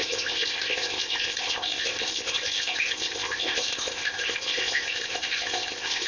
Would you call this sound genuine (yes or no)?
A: no